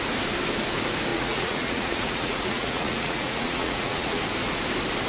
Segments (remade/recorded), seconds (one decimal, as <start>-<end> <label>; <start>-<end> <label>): 0.0-1.1 recorded; 1.1-4.2 remade; 4.2-5.1 recorded